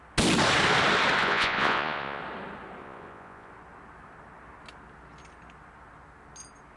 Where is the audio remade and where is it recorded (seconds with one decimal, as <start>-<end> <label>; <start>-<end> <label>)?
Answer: 0.0-1.2 recorded; 1.2-2.2 remade; 2.2-2.8 recorded; 2.8-3.5 remade; 3.5-6.8 recorded